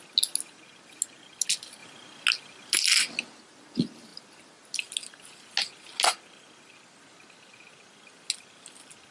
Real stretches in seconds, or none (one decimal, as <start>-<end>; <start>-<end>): 0.0-9.1